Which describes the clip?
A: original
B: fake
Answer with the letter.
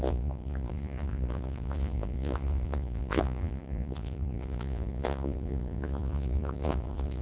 B